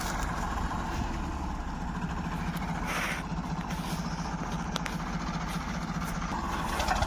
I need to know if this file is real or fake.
real